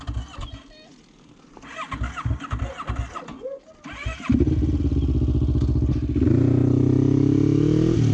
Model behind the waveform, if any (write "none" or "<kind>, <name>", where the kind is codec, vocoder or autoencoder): none